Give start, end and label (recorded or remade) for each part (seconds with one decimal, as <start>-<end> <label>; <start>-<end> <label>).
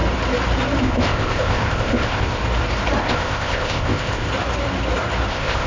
0.0-0.8 recorded; 0.8-2.4 remade; 2.4-3.0 recorded; 3.0-4.3 remade; 4.3-5.3 recorded; 5.3-5.7 remade